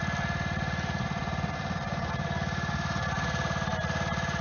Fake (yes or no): no